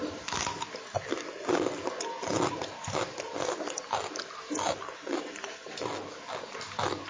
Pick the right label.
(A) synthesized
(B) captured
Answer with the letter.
B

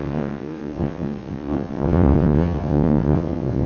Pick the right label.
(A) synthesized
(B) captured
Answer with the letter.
A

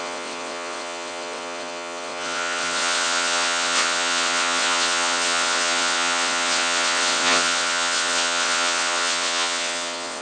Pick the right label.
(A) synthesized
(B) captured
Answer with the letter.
A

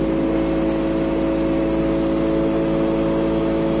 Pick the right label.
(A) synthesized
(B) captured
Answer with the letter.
B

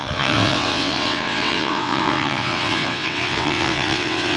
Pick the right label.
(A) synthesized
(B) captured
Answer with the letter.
A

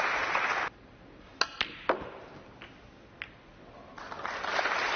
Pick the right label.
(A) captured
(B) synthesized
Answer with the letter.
A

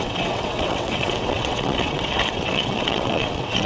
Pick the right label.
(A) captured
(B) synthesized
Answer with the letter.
B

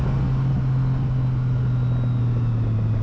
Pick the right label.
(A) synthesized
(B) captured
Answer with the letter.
B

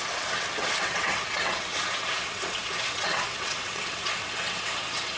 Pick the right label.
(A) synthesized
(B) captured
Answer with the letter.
A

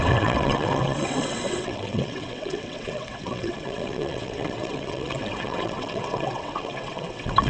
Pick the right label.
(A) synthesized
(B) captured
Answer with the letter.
A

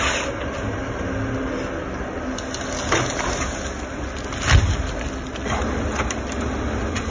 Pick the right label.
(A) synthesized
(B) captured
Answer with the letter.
B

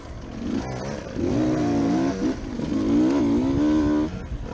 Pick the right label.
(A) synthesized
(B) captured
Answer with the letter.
B